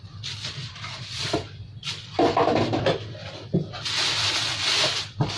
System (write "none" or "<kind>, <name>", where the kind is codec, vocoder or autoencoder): none